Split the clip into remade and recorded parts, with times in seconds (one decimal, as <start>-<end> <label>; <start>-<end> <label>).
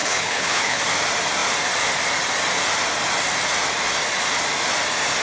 0.0-0.8 remade; 0.8-5.2 recorded